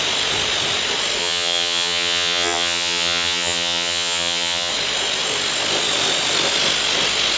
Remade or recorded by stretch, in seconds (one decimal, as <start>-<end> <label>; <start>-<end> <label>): 0.0-1.2 recorded; 1.2-4.7 remade; 4.7-7.4 recorded